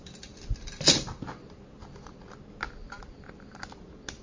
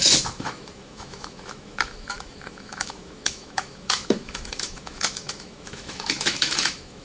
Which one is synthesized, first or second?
second